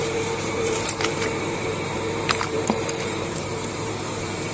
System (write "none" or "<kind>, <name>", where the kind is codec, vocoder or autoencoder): vocoder, BigVGAN v2